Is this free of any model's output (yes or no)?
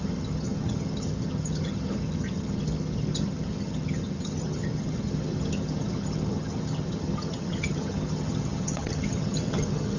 no